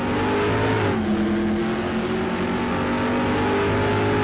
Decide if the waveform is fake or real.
real